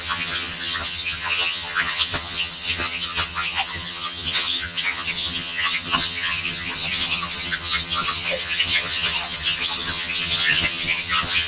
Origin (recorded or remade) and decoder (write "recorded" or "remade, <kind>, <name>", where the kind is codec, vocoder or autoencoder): remade, vocoder, HiFi-GAN